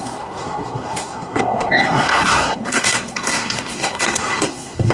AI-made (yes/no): yes